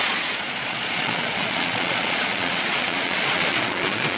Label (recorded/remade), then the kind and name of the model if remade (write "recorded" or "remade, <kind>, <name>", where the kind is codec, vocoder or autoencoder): remade, vocoder, Vocos